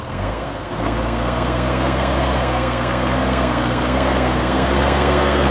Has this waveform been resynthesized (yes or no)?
yes